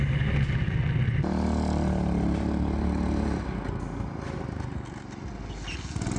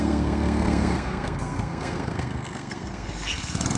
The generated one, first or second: second